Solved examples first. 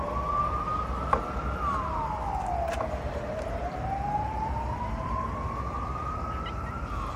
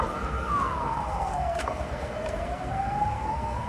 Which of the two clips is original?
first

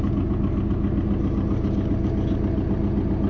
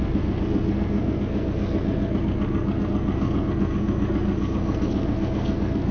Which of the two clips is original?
first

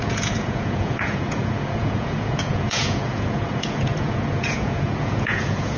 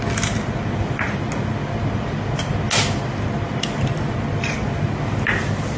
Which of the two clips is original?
second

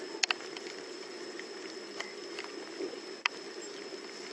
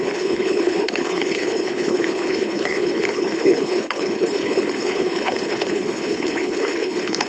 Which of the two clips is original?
first